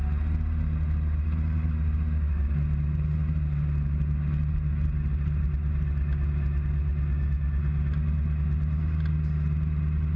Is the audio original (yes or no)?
yes